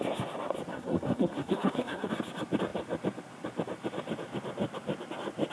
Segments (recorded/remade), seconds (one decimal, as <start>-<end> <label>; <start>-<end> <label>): 0.0-0.7 recorded; 0.7-2.1 remade; 2.1-5.5 recorded